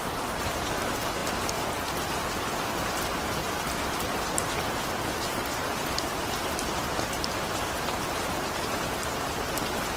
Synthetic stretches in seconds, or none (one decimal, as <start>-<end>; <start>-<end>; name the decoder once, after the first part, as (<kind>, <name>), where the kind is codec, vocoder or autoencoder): none